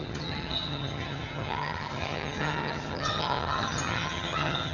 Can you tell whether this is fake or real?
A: fake